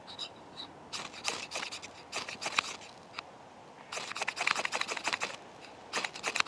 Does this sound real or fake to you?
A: real